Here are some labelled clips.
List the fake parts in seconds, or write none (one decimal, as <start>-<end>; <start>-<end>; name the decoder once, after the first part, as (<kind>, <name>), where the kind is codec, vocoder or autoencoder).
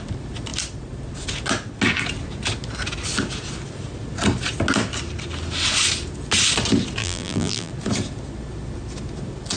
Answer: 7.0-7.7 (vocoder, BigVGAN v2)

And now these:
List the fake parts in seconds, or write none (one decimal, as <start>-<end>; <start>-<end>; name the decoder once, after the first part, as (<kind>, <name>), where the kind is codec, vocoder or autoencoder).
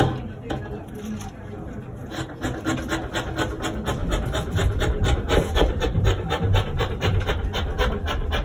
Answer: 4.0-7.3 (vocoder, BigVGAN v2)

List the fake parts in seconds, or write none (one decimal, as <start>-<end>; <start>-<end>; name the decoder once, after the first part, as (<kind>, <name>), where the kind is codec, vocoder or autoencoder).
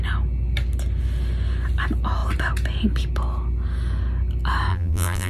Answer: 4.7-5.3 (vocoder, BigVGAN v2)